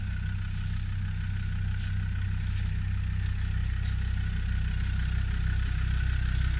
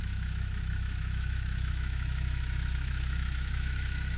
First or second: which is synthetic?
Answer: second